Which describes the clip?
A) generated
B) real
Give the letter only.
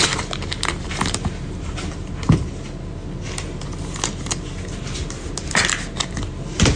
B